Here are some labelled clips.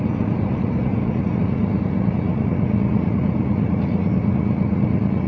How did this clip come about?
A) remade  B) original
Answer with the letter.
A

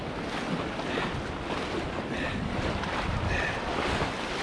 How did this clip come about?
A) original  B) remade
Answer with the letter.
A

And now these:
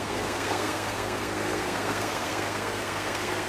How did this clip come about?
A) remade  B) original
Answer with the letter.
A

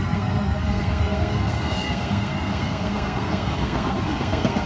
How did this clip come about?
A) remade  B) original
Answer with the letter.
A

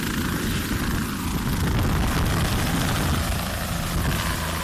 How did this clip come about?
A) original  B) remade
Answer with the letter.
A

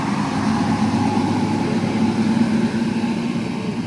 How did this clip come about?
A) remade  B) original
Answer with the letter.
B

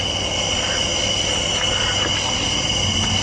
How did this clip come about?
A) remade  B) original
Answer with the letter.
B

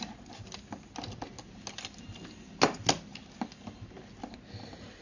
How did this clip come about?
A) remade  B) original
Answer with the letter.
B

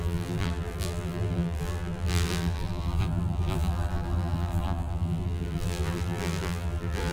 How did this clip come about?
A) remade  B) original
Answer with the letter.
A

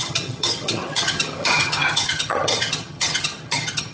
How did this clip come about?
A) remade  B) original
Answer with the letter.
A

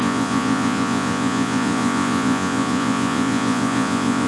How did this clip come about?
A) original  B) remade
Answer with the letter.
B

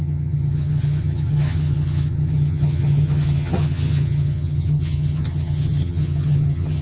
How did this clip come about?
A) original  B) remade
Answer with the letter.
B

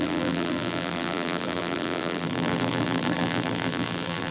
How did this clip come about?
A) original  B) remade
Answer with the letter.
B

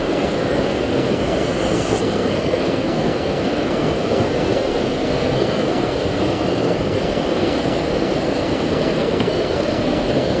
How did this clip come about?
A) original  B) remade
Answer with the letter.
B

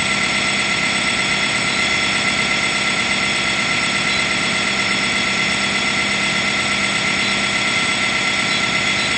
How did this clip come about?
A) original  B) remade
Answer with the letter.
A